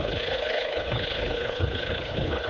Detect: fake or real fake